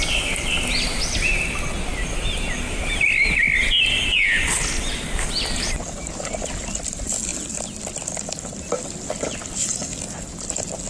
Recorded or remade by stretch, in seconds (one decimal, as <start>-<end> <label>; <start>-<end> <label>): 0.0-10.9 recorded